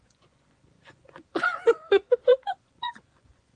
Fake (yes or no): yes